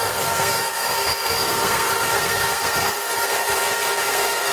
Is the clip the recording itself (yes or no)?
no